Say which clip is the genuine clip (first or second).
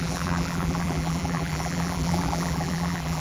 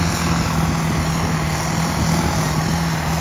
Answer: second